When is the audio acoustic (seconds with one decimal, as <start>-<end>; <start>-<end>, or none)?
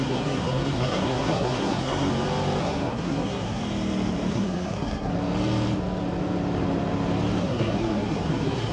2.1-2.6; 3.6-4.3; 5.1-7.4